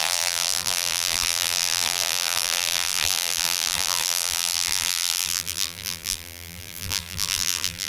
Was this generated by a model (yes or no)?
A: yes